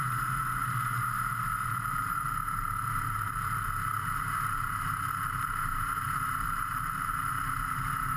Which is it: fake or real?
fake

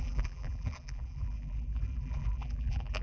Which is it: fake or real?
fake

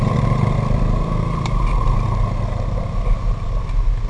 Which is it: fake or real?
real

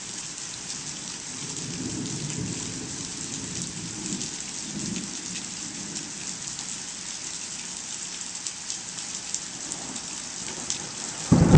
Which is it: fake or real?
real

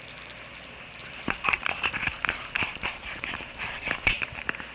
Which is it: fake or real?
fake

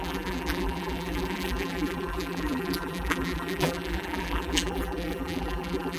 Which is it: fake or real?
fake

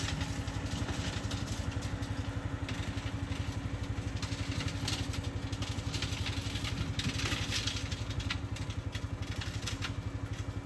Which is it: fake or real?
real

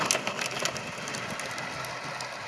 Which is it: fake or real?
real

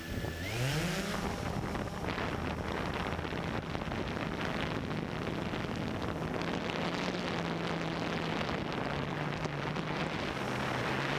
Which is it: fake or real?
real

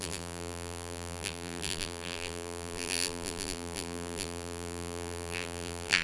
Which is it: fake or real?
fake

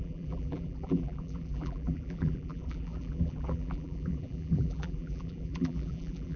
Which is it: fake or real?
fake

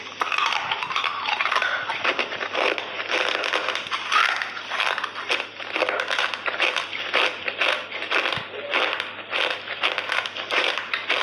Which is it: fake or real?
real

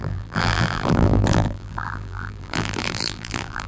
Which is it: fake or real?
fake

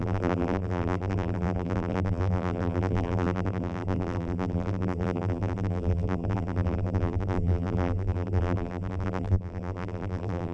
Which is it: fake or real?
fake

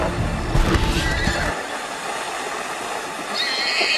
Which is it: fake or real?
real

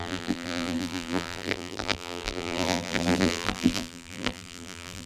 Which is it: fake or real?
fake